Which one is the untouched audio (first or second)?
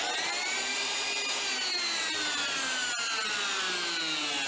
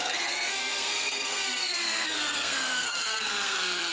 first